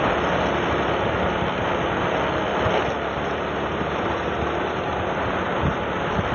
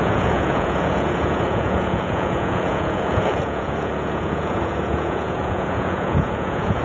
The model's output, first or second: second